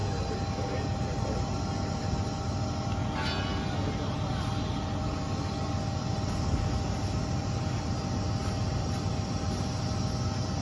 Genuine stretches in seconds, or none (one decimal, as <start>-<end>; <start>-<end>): 0.0-10.6